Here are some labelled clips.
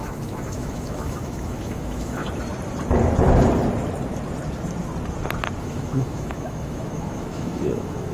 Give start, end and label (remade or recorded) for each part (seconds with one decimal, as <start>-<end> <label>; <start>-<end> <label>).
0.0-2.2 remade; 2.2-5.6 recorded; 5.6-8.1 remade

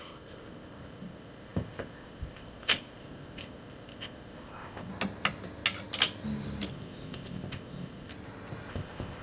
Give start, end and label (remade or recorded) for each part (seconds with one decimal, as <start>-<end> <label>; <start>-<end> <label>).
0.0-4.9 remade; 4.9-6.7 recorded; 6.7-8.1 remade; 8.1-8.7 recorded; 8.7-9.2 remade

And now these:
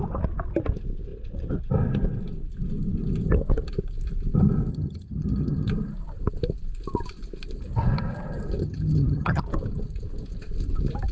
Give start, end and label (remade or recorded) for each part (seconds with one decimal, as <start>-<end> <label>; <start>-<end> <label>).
0.0-4.7 recorded; 4.7-5.7 remade; 5.7-8.6 recorded; 8.6-9.4 remade; 9.4-11.1 recorded

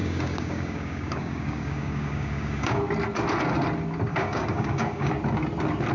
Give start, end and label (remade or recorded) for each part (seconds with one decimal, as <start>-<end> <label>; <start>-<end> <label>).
0.0-2.8 remade; 2.8-4.1 recorded; 4.1-5.1 remade; 5.1-5.9 recorded

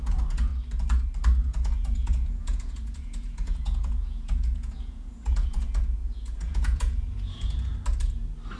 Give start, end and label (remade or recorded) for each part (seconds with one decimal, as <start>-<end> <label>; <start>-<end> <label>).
0.0-0.5 remade; 0.5-1.4 recorded; 1.4-7.7 remade; 7.7-8.6 recorded

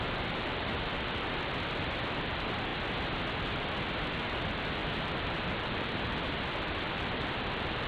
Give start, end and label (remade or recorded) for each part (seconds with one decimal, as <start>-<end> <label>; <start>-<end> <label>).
0.0-2.7 remade; 2.7-4.1 recorded; 4.1-7.9 remade

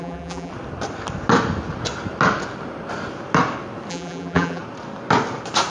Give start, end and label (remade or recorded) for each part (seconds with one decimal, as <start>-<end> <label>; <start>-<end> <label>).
0.0-0.5 remade; 0.5-3.9 recorded; 3.9-4.6 remade; 4.6-5.7 recorded